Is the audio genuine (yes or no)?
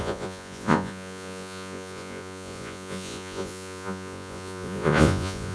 no